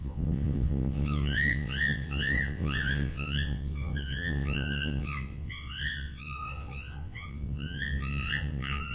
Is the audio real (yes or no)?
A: no